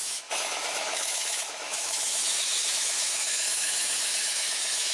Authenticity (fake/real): fake